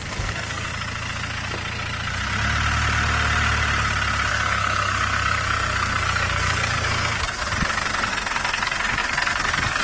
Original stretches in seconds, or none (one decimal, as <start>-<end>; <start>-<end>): 0.7-4.3; 7.4-8.1